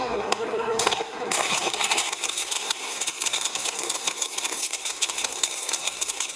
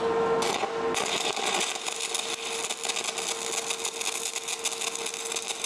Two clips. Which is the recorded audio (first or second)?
second